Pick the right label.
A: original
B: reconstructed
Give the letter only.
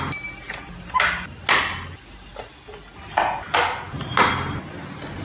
A